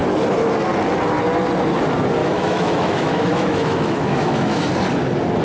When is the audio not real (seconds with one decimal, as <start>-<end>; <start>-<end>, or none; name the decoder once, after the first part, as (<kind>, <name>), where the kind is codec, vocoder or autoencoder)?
2.2-4.7 (autoencoder, DAC-VAE)